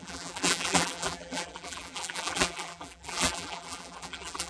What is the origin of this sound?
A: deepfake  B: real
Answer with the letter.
A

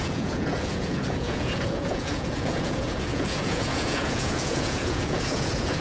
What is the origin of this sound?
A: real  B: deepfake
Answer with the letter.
B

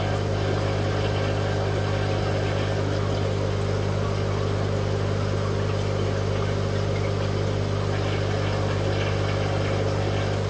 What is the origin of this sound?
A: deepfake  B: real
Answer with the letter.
B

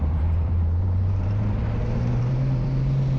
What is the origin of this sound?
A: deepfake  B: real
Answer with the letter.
A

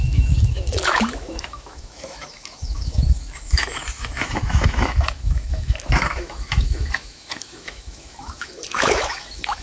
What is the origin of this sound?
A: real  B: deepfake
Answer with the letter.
B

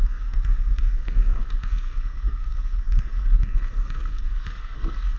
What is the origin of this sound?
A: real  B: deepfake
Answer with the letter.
B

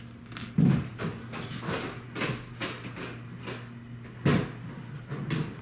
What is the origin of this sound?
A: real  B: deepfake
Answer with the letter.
A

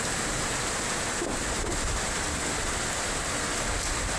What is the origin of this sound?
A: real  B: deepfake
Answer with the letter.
A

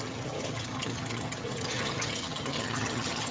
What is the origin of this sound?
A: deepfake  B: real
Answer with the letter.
A